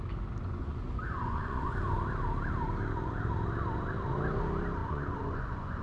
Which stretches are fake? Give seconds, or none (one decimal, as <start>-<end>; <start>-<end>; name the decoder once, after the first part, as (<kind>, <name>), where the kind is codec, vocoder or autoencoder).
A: 0.4-1.7 (vocoder, Vocos); 4.8-5.8

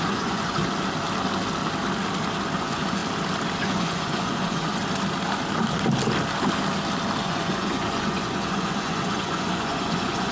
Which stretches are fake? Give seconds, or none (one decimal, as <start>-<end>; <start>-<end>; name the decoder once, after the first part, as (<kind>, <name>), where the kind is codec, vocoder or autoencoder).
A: 0.0-0.6 (vocoder, Vocos); 2.6-3.0; 3.6-4.8; 7.2-10.3